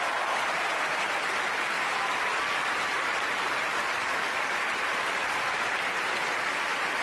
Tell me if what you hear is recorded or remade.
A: recorded